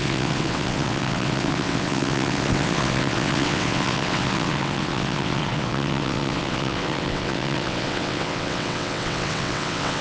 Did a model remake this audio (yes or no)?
yes